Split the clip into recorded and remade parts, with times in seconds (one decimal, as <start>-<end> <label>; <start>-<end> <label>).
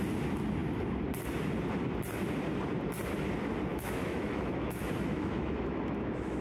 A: 0.0-3.7 recorded; 3.7-6.4 remade